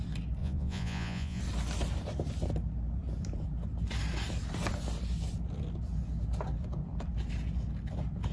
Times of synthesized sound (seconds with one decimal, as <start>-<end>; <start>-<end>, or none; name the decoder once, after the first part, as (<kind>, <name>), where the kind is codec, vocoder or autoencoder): 0.4-1.4 (vocoder, Vocos)